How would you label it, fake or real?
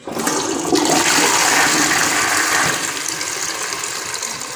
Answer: real